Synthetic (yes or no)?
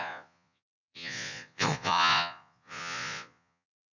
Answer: yes